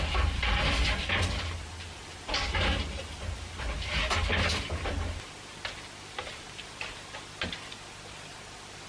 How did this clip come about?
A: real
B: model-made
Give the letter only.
A